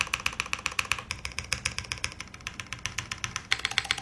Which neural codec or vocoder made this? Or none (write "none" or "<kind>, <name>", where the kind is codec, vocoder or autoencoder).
none